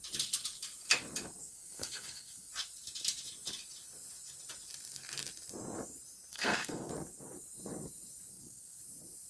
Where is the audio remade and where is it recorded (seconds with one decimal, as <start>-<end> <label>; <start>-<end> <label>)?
0.0-1.4 recorded; 1.4-2.5 remade; 2.5-6.3 recorded; 6.3-6.9 remade; 6.9-8.3 recorded; 8.3-8.8 remade; 8.8-9.3 recorded